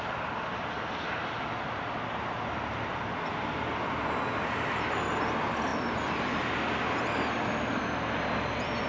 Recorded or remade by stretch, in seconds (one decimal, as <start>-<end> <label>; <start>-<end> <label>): 0.0-8.9 recorded